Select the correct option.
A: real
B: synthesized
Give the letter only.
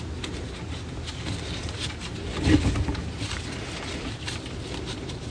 A